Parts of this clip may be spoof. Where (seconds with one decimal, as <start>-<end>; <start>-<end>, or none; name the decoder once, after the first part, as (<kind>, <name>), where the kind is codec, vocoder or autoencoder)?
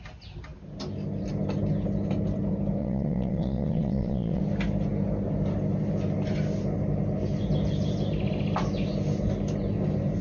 2.8-4.4 (vocoder, Vocos)